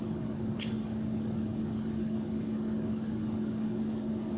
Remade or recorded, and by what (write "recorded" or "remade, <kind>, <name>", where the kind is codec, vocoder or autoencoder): remade, codec, DAC